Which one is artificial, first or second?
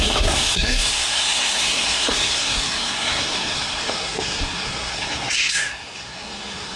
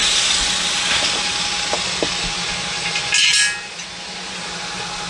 first